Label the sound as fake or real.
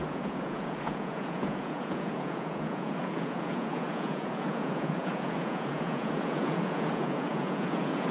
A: fake